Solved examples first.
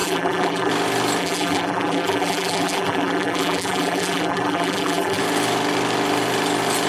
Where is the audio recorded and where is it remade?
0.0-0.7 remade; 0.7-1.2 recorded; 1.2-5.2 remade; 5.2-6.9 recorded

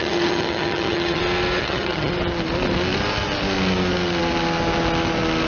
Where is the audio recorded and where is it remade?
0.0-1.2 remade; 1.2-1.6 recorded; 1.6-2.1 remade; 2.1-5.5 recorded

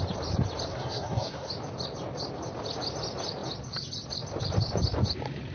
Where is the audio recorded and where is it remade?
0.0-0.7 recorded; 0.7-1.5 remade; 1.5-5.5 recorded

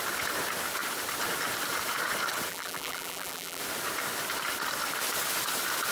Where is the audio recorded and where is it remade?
0.0-2.5 recorded; 2.5-3.6 remade; 3.6-5.9 recorded

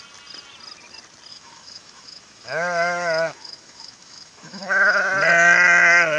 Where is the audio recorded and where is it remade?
0.0-1.3 recorded; 1.3-5.0 remade; 5.0-6.2 recorded